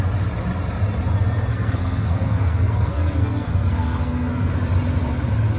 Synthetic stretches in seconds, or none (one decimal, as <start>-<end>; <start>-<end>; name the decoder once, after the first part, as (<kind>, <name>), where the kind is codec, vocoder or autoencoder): 1.5-4.6 (codec, SNAC)